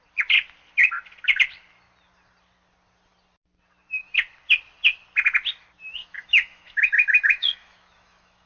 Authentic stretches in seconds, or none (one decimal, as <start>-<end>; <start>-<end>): 0.0-6.0